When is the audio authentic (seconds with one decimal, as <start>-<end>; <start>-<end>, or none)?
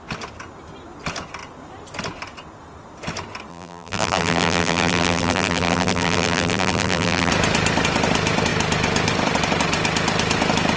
0.0-3.5; 7.3-10.8